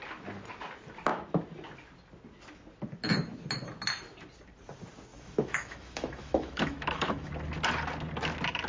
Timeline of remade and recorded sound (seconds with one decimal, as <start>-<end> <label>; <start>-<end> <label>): 0.0-5.1 recorded; 5.1-7.3 remade; 7.3-8.7 recorded